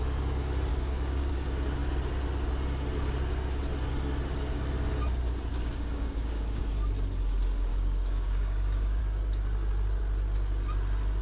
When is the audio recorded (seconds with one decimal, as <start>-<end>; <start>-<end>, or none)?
0.0-0.7; 1.3-5.5; 6.6-7.7; 9.0-11.2